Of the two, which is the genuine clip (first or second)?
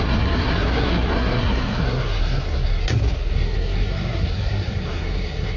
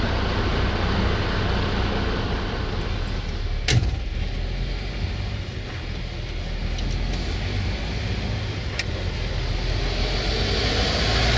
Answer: second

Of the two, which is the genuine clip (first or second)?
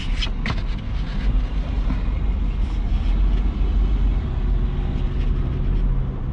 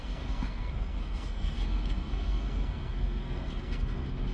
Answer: first